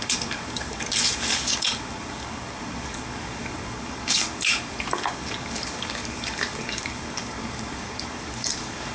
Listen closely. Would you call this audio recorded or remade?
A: remade